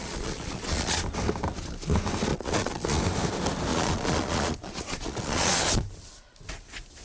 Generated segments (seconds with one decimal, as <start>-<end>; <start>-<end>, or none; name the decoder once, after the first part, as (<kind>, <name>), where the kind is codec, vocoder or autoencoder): 0.0-1.0 (vocoder, Vocos); 2.3-3.0; 3.7-5.7